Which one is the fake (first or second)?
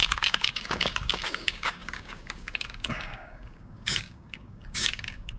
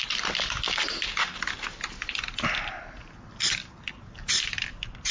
first